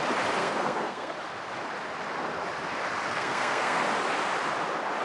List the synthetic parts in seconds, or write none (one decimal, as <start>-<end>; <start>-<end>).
0.4-1.1; 3.1-3.8